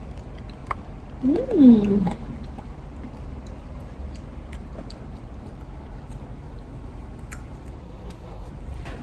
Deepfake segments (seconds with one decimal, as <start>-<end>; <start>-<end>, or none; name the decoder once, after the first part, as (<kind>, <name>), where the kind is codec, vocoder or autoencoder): 7.8-8.5 (codec, SNAC)